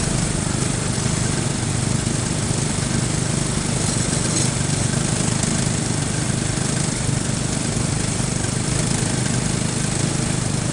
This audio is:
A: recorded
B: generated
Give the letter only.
A